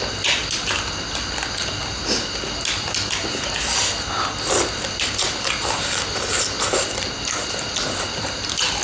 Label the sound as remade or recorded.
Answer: recorded